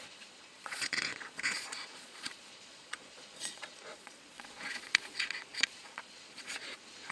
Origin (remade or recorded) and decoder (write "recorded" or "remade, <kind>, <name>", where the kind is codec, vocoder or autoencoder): remade, vocoder, Vocos